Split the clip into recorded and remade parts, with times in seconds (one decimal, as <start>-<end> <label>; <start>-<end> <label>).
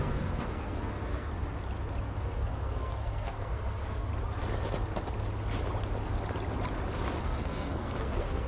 0.0-1.3 remade; 1.3-2.0 recorded; 2.0-4.1 remade; 4.1-7.2 recorded; 7.2-8.5 remade